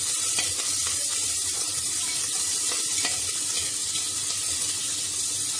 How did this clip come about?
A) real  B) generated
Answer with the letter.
B